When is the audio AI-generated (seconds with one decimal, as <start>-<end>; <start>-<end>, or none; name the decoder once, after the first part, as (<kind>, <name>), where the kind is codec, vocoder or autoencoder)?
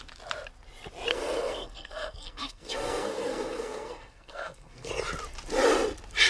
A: 1.1-4.9 (codec, SNAC)